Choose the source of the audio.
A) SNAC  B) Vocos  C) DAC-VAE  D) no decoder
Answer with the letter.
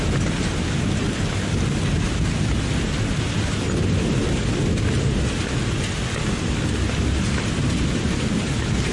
D